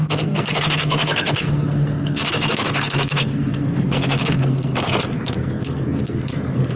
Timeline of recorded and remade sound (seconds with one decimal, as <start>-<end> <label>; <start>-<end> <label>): 0.0-6.8 remade